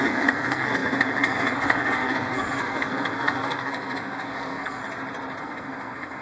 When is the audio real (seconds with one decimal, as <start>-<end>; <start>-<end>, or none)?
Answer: 4.8-5.4